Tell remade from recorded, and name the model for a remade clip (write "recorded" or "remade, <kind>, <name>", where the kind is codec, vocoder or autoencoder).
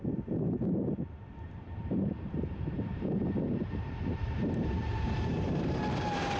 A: remade, vocoder, BigVGAN v2